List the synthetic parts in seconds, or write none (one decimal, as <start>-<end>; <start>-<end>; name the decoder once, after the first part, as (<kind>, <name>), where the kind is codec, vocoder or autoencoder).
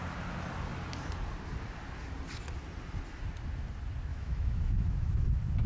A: 4.1-5.3 (autoencoder, DAC-VAE)